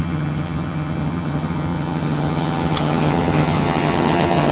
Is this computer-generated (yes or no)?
yes